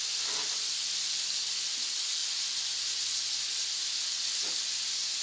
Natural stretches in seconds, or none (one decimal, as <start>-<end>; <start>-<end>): 0.0-5.2